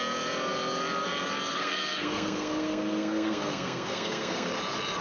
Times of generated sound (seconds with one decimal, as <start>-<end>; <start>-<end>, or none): 1.5-4.5